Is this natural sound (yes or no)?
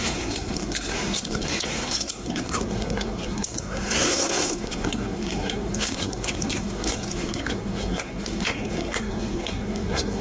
no